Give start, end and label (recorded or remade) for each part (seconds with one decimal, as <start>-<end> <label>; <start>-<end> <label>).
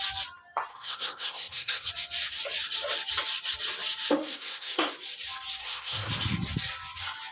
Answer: 0.0-0.7 recorded; 0.7-1.9 remade; 1.9-4.2 recorded; 4.2-4.9 remade; 4.9-5.6 recorded; 5.6-6.1 remade; 6.1-7.3 recorded